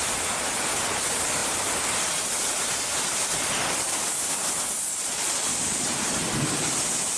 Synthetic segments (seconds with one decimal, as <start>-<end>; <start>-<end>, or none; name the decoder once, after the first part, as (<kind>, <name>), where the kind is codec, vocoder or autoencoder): 4.9-5.5 (vocoder, Vocos)